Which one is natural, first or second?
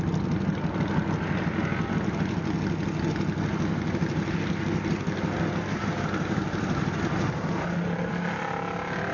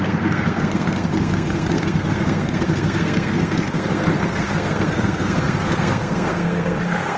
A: first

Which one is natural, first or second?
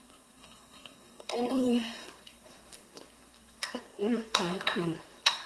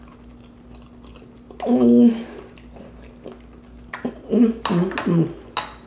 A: second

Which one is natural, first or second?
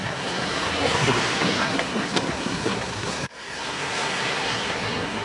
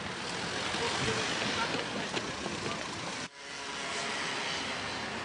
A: second